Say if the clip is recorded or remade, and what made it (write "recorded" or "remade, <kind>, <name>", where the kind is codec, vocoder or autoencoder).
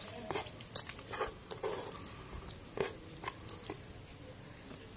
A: recorded